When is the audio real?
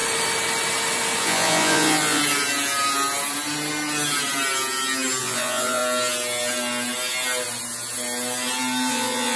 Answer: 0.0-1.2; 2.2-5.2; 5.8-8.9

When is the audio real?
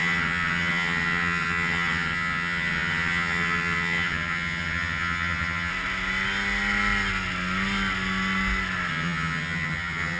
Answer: 5.7-8.9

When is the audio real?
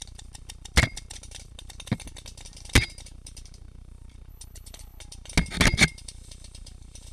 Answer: 0.0-4.3; 5.0-7.1